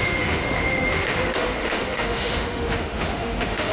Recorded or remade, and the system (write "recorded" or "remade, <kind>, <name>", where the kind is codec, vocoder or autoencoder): remade, autoencoder, DAC-VAE